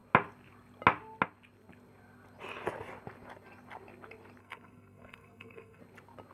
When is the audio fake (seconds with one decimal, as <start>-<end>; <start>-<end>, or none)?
4.4-5.8